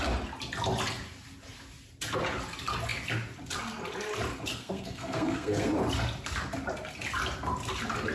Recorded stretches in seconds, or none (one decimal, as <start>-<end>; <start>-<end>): 0.0-4.5; 5.8-8.1